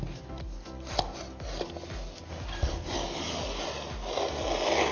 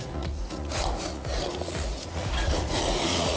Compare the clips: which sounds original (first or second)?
first